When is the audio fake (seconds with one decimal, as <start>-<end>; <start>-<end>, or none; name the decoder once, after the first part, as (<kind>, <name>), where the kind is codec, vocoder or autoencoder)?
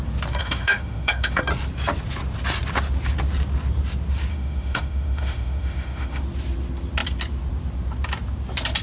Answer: 0.4-1.4 (autoencoder, DAC-VAE); 4.3-6.2